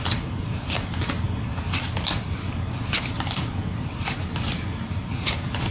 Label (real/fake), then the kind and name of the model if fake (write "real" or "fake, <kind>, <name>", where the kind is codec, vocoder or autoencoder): real